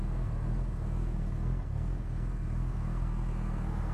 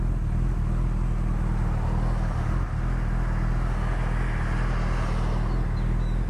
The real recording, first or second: second